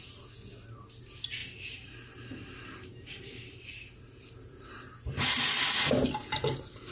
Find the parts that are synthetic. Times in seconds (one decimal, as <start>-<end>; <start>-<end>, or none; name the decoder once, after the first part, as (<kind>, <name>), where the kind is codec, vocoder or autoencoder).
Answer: 1.4-5.5 (vocoder, BigVGAN v2)